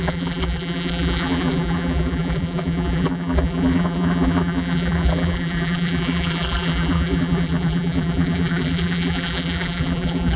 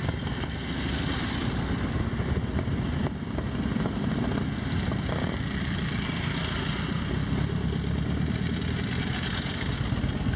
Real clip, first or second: second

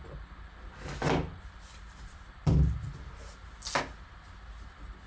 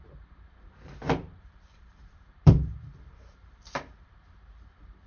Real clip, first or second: first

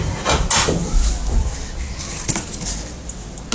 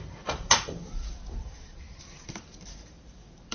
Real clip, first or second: first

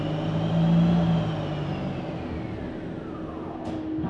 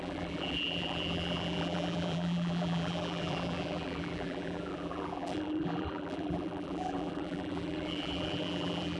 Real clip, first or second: first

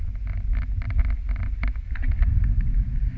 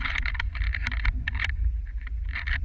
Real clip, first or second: first